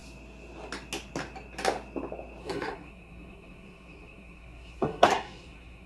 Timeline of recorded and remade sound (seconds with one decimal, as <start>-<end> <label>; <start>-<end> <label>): 0.0-2.4 recorded; 2.4-5.9 remade